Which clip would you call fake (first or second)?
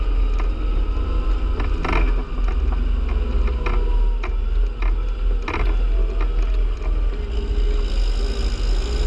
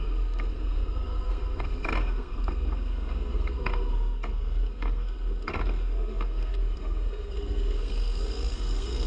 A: second